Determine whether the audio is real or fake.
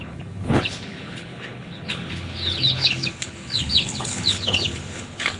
fake